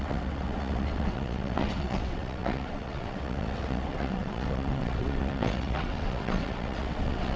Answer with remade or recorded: remade